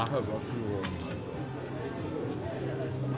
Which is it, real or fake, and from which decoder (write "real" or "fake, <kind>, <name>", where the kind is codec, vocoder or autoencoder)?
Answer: real